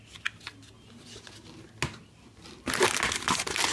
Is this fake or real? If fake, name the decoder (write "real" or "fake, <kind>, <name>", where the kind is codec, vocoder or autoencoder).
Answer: real